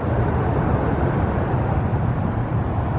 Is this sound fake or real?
real